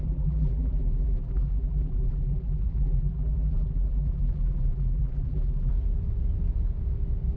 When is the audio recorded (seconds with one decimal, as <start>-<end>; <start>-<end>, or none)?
5.7-7.4